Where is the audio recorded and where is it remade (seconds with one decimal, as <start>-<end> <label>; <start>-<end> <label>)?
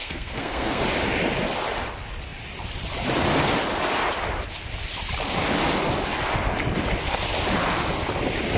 0.0-0.8 remade; 0.8-8.6 recorded